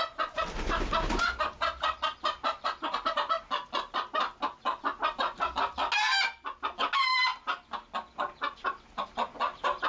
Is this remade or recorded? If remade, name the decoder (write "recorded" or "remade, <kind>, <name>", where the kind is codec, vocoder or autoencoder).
recorded